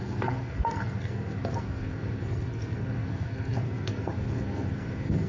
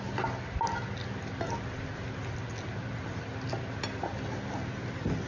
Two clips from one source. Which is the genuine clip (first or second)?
second